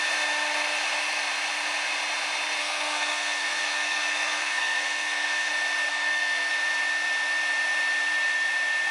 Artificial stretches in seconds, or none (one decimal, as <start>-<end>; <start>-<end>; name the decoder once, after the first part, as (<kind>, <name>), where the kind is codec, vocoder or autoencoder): 2.6-5.5 (codec, SNAC); 5.9-6.5